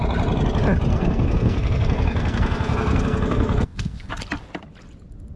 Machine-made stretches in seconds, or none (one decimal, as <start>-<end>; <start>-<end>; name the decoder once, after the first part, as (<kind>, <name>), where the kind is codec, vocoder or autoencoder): 0.9-4.1 (codec, SNAC)